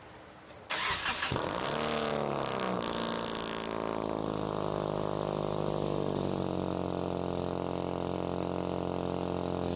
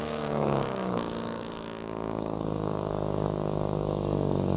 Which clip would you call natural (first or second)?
first